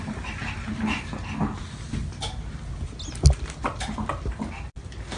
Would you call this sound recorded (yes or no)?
yes